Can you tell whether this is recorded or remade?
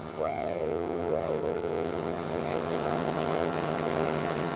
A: remade